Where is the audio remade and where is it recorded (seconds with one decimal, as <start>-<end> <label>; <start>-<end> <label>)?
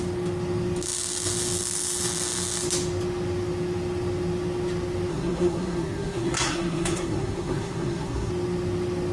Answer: 0.0-5.1 recorded; 5.1-8.3 remade; 8.3-9.1 recorded